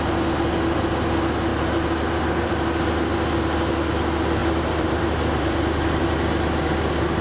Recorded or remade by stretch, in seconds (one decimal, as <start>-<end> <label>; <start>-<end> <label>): 0.0-4.4 recorded; 4.4-6.0 remade; 6.0-7.2 recorded